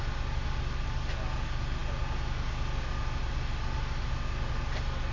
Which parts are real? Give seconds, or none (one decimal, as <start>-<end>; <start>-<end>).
0.0-5.1